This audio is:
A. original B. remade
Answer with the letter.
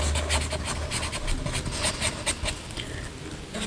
A